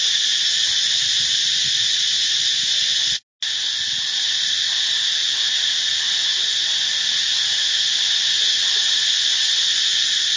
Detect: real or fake real